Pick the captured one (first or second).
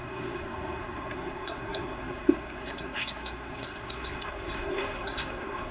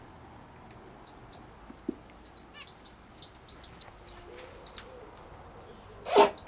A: second